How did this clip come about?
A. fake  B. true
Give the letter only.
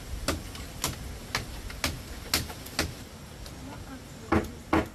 B